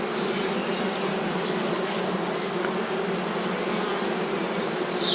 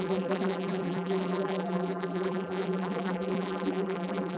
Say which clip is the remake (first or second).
second